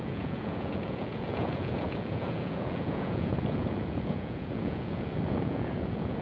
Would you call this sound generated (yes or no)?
yes